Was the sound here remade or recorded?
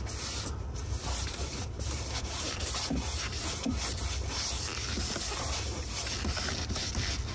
recorded